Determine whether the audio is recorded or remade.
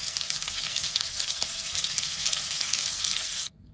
remade